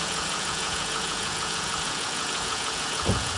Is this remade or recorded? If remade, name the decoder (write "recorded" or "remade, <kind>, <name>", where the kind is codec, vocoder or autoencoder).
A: remade, vocoder, Vocos